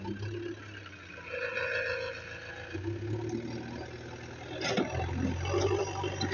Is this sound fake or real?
real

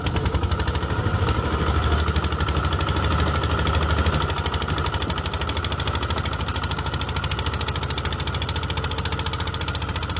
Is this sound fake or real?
real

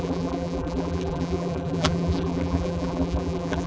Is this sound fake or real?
fake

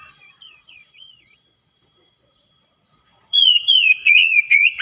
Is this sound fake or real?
fake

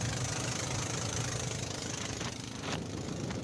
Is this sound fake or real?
fake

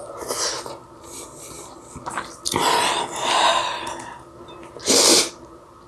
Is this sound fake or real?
real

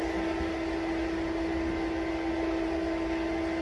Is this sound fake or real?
real